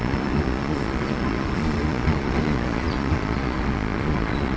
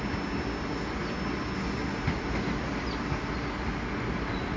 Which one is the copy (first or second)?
first